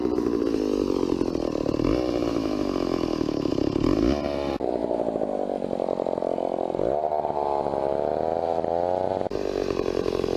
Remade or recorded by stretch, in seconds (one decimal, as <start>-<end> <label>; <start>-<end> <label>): 0.0-2.3 recorded; 2.3-3.5 remade; 3.5-10.4 recorded